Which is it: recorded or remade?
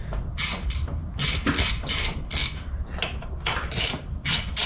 recorded